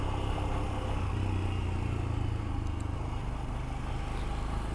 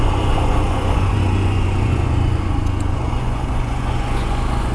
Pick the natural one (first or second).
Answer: first